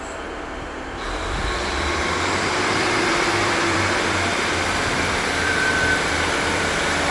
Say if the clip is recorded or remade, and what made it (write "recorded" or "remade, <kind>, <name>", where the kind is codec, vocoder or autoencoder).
remade, vocoder, BigVGAN v2